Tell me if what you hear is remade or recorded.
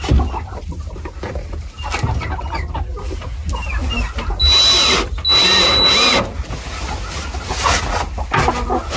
recorded